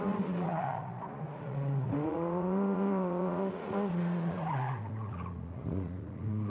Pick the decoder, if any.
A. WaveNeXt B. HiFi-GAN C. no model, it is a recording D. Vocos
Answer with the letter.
D